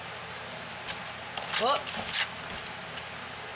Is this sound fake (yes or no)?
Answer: no